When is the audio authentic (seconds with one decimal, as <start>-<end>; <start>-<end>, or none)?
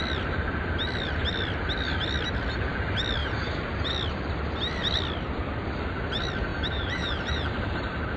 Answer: 0.0-3.2; 3.9-6.5; 7.7-8.2